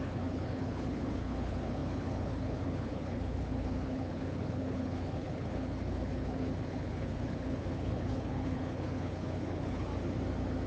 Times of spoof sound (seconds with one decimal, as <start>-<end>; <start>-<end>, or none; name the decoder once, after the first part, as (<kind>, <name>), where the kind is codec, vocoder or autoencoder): 0.0-9.9 (codec, HILCodec)